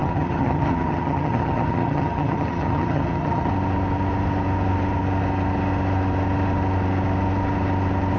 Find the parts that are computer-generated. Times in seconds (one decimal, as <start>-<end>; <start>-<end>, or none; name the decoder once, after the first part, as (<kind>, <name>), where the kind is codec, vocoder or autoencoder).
0.0-3.5 (vocoder, HiFi-GAN)